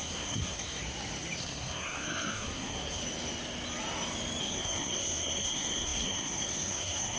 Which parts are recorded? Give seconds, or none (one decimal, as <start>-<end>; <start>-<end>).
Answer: 0.8-1.4; 3.0-4.4